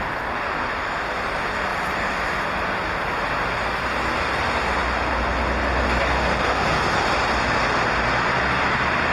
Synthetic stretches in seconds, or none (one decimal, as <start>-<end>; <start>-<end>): none